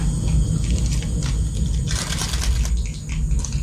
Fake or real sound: real